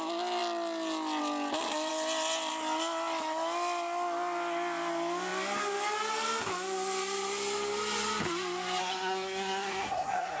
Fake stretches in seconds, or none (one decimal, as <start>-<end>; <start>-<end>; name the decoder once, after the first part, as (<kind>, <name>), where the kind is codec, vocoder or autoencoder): 8.8-10.4 (codec, SNAC)